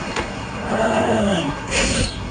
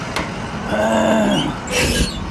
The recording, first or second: second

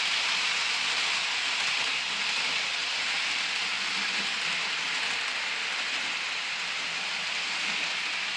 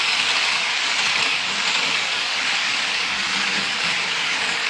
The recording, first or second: first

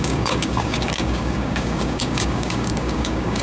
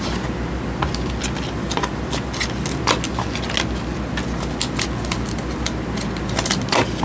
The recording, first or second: second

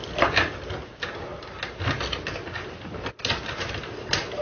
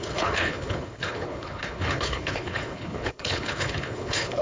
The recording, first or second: first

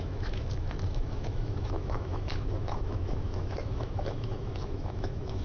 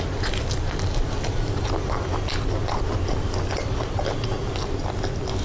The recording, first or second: second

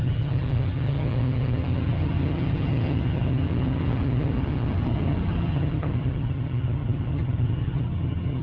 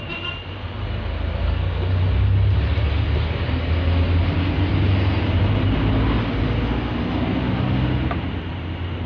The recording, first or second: second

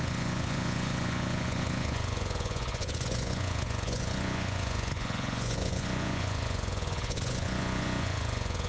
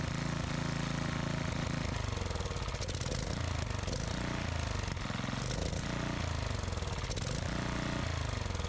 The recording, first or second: second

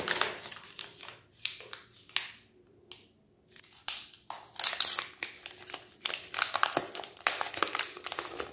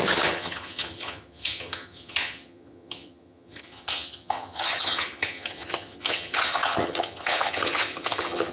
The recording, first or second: first